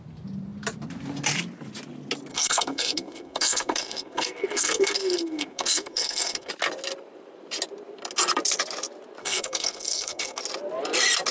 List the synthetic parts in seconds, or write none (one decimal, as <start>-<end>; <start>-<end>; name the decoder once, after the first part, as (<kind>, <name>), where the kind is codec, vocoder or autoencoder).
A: 2.3-6.5 (codec, SNAC); 9.2-10.4